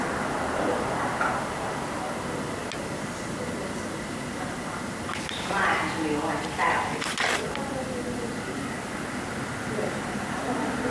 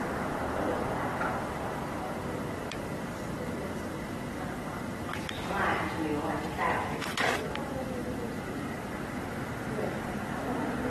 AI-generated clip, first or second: second